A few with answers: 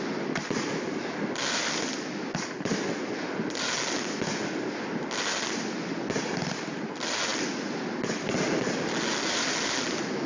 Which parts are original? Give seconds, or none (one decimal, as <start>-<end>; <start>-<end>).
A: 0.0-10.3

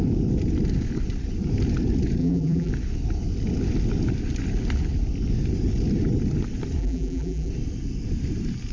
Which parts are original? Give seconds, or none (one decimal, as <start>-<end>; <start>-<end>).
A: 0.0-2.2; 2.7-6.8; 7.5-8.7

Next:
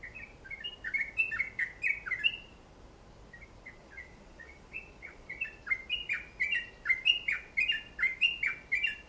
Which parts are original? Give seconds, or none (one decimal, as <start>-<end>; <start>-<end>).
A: 0.0-3.8; 5.3-9.1

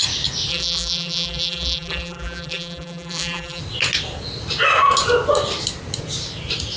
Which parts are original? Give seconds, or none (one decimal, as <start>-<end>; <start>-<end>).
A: 0.0-0.5; 3.6-6.8

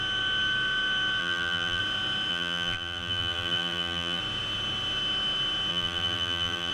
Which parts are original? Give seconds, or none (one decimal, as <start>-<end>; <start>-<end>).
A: 0.0-1.2; 1.8-2.3; 4.2-5.7

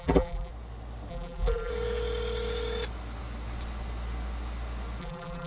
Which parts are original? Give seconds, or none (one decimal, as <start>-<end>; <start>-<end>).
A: 0.5-1.1; 1.7-5.0